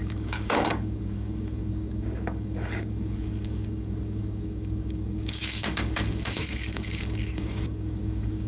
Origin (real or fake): fake